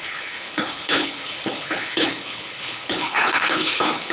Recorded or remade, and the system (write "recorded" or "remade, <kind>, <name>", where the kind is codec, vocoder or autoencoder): remade, codec, HILCodec